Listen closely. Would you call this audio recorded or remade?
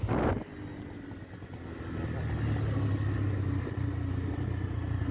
recorded